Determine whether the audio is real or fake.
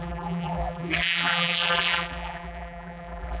fake